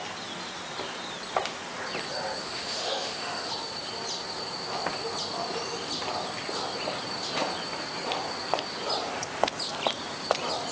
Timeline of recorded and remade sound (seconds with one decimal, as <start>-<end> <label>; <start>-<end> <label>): 0.0-2.4 recorded; 2.4-3.5 remade; 3.5-10.7 recorded